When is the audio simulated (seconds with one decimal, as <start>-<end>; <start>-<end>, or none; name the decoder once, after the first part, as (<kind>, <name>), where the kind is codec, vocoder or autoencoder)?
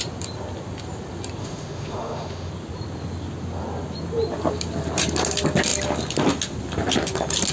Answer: 1.4-2.5 (autoencoder, DAC-VAE)